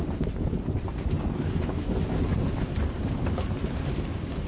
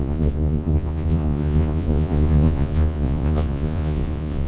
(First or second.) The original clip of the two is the first